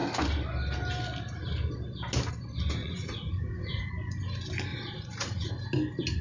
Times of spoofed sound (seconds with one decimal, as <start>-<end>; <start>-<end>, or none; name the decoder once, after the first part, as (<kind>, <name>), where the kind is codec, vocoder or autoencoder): 2.8-3.9 (vocoder, Vocos); 4.7-5.5